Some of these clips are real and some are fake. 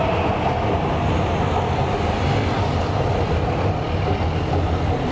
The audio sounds real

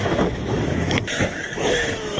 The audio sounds fake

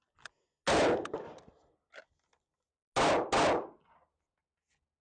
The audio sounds real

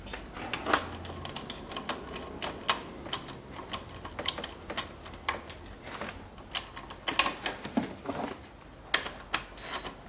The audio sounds real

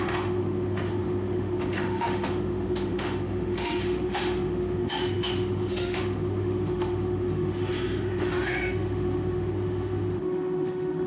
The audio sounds fake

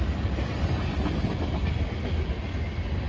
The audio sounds real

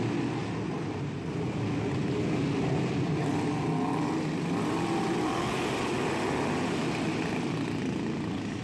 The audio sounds real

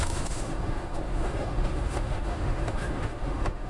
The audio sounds fake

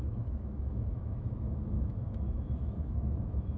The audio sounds fake